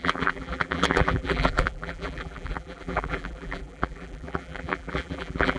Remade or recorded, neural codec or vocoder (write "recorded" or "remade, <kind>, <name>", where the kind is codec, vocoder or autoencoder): remade, vocoder, BigVGAN v2